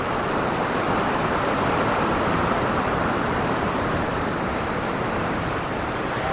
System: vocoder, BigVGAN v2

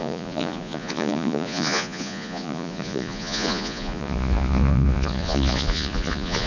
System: vocoder, Vocos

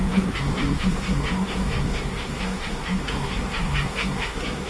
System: codec, SNAC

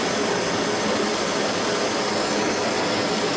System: none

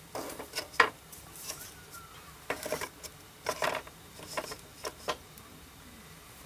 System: vocoder, BigVGAN v2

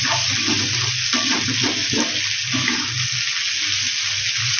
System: none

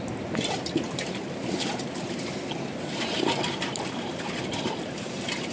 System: none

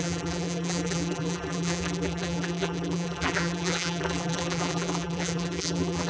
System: vocoder, BigVGAN v2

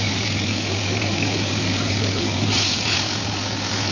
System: codec, DAC